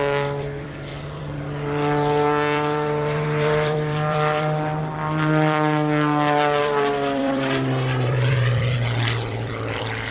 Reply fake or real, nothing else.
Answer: fake